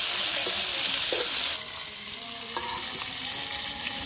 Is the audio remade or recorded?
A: recorded